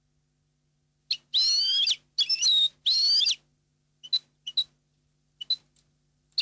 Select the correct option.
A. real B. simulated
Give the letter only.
A